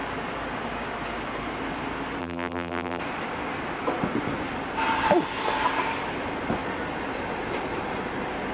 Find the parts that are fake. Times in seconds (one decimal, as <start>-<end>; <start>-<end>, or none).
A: 2.2-3.0